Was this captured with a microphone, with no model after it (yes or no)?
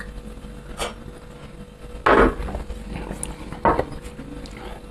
yes